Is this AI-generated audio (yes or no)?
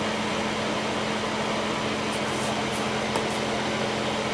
no